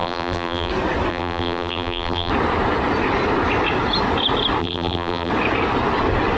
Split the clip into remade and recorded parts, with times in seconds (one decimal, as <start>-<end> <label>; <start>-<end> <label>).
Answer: 0.0-0.7 remade; 0.7-1.1 recorded; 1.1-2.3 remade; 2.3-4.6 recorded; 4.6-5.3 remade; 5.3-6.4 recorded